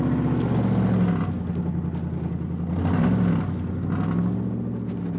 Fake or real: real